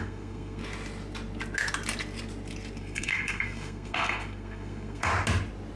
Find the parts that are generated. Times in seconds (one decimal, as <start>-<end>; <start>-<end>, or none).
0.0-0.6; 2.8-5.1